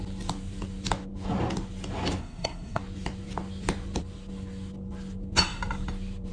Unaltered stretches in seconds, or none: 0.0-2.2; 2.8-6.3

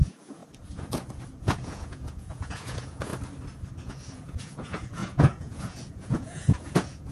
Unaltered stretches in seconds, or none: 0.4-1.4; 3.1-3.7

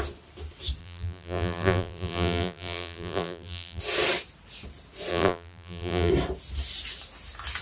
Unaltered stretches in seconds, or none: 0.0-0.8; 3.8-5.1; 6.1-7.6

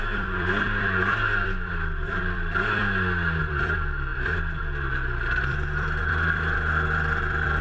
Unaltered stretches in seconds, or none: 2.8-3.4

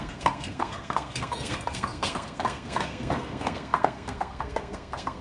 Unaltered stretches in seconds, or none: none

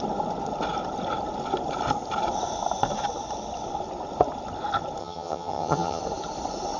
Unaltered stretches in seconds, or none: 0.0-5.0; 6.0-6.8